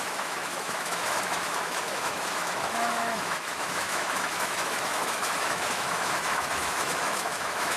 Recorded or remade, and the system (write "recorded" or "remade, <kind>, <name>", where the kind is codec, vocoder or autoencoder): remade, autoencoder, DAC-VAE